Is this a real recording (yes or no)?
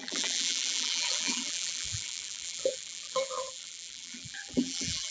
no